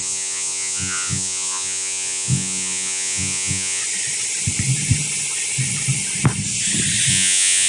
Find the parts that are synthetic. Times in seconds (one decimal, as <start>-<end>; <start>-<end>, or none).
0.0-3.8; 7.1-7.7